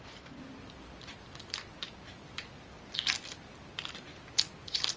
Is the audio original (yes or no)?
no